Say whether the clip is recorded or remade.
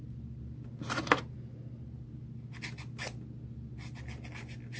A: recorded